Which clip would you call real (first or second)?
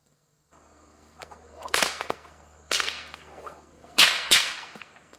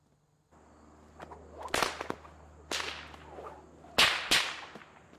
second